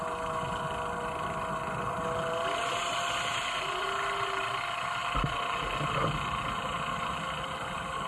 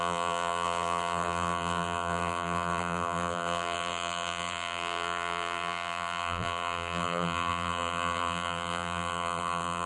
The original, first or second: first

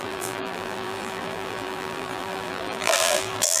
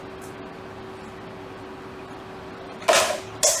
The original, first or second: second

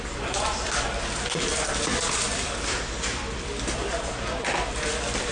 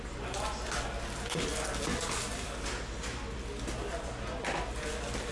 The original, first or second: second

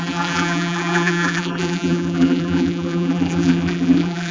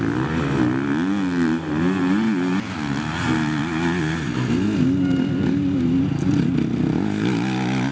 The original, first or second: second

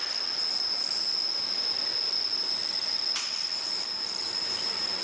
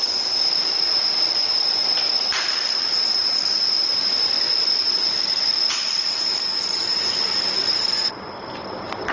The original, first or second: first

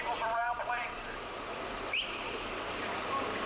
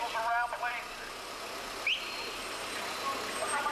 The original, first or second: second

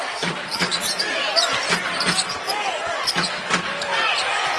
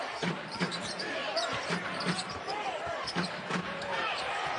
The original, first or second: first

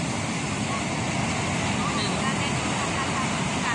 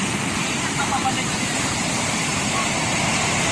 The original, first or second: first